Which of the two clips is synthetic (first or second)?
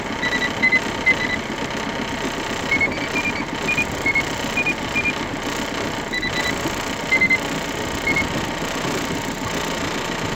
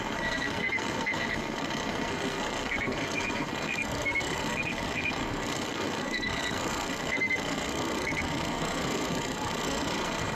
second